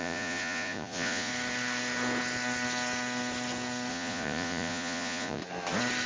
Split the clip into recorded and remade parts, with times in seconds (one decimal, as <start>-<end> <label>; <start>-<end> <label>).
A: 0.0-1.3 remade; 1.3-3.9 recorded; 3.9-5.4 remade; 5.4-6.1 recorded